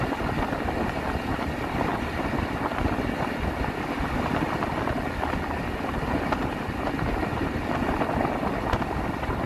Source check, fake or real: real